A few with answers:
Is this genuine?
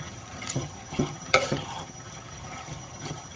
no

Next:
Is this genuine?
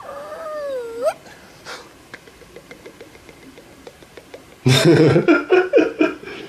yes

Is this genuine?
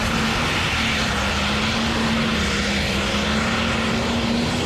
yes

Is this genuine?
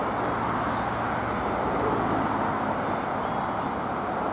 yes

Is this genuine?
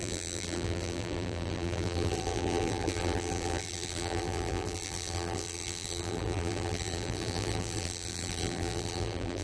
no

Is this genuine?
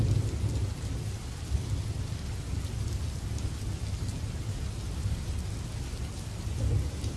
yes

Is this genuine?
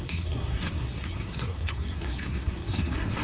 no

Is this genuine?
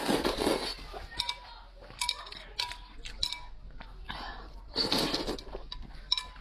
yes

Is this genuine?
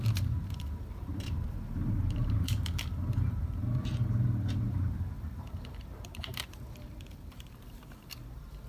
no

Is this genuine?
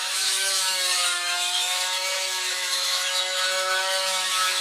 no